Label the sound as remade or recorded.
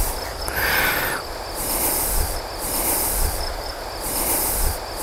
recorded